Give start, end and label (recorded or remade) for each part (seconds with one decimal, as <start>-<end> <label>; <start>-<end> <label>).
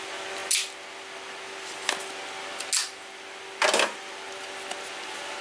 0.0-5.4 recorded